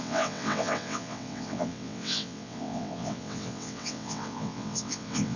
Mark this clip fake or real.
fake